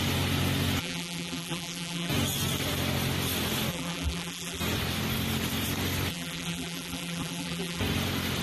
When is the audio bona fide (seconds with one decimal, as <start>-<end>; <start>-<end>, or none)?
0.0-0.8; 2.1-3.7; 4.6-6.1; 7.8-8.4